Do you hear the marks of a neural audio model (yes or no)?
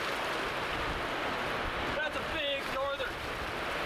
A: no